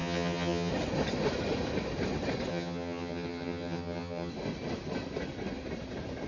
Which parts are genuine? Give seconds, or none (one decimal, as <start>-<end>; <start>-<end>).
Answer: 0.7-2.5; 4.3-6.3